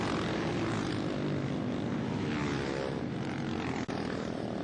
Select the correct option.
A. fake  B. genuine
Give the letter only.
B